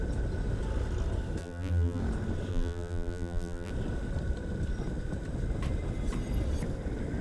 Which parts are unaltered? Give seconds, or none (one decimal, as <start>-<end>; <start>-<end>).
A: 0.0-1.4; 2.0-2.5; 3.7-7.2